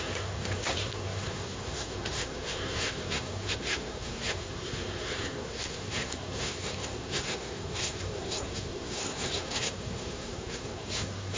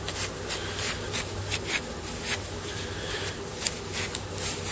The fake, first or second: first